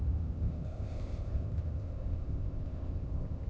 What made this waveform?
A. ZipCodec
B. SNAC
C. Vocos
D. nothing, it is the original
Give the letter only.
A